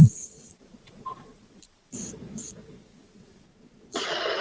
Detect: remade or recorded remade